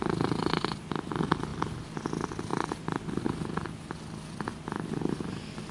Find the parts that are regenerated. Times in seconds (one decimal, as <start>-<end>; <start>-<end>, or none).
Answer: none